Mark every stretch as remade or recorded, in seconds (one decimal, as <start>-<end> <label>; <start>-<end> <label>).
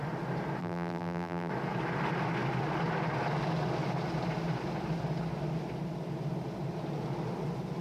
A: 0.0-0.6 recorded; 0.6-1.5 remade; 1.5-7.8 recorded